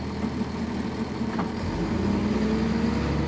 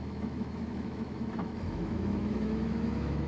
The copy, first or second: second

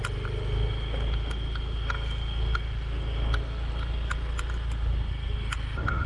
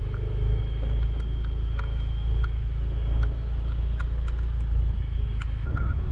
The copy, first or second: second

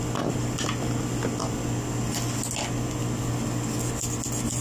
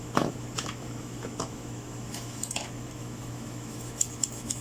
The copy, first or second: second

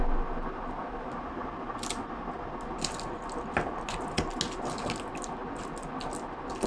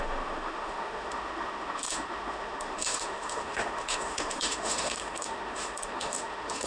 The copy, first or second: second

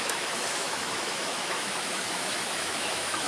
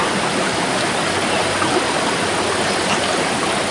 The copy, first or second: first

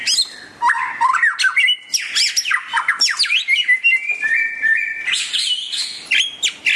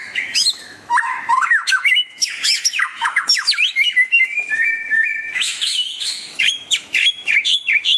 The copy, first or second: second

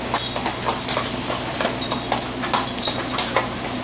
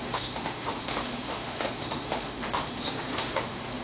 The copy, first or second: second